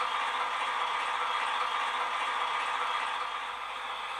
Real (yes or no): yes